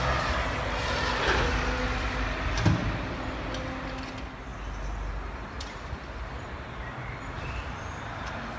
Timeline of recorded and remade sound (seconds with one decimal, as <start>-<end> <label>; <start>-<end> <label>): 0.0-8.6 recorded